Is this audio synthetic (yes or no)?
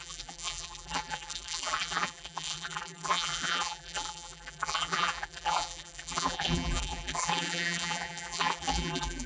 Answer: yes